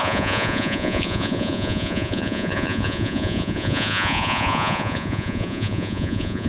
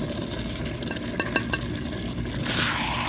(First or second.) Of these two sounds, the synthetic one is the first